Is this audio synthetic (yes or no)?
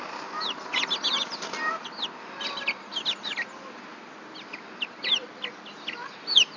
no